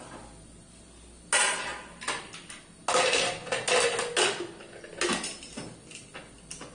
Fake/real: real